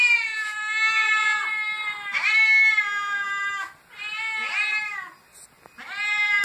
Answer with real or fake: real